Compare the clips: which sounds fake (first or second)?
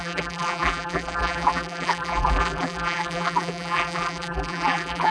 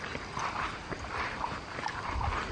first